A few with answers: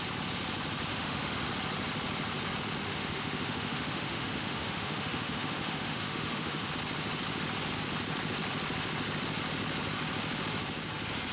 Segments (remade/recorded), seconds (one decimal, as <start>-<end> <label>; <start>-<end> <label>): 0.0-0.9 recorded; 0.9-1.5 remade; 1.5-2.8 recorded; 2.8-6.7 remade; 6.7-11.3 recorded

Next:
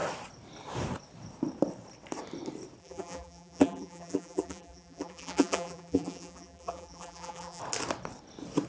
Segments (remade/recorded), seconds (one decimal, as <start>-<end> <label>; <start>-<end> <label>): 0.0-2.8 recorded; 2.8-7.6 remade; 7.6-8.7 recorded

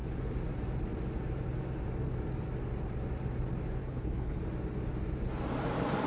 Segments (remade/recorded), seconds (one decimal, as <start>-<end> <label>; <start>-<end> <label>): 0.0-3.8 recorded; 3.8-4.4 remade; 4.4-6.1 recorded

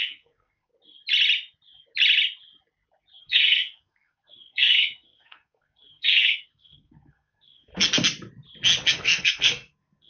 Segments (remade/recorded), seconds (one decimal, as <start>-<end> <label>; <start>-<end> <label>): 0.0-0.7 remade; 0.7-3.2 recorded; 3.2-7.7 remade; 7.7-8.9 recorded; 8.9-10.1 remade

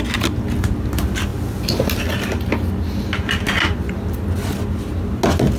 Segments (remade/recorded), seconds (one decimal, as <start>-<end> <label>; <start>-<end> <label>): 0.0-5.6 recorded

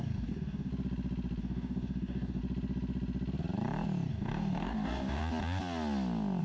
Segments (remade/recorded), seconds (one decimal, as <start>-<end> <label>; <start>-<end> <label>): 0.0-0.7 remade; 0.7-1.4 recorded; 1.4-2.4 remade; 2.4-4.1 recorded; 4.1-5.2 remade; 5.2-6.4 recorded

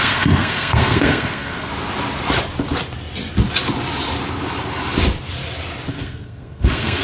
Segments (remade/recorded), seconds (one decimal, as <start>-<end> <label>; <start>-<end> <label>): 0.0-1.7 remade; 1.7-5.9 recorded; 5.9-7.0 remade